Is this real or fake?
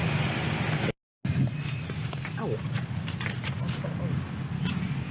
real